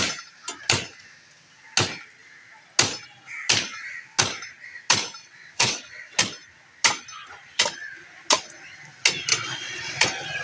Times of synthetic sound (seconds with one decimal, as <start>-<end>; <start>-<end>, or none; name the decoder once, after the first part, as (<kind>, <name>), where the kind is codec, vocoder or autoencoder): 5.2-6.2 (vocoder, WaveNeXt); 9.3-10.0